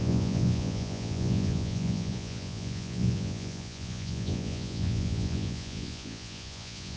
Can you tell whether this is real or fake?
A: fake